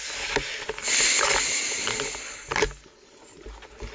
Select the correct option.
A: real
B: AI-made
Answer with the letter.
A